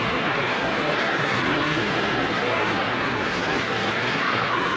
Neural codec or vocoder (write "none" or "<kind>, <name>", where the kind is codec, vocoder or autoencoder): codec, SNAC